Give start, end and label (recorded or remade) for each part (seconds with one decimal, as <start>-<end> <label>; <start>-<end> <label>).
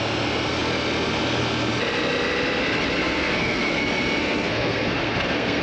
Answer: 0.0-3.0 recorded; 3.0-3.8 remade; 3.8-4.2 recorded; 4.2-5.6 remade